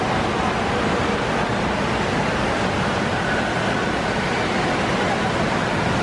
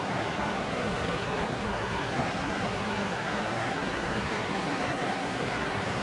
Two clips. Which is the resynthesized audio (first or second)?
second